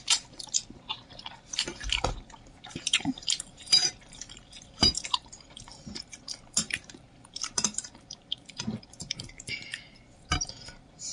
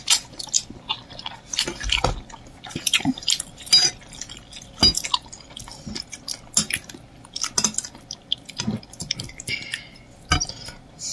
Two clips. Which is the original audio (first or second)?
second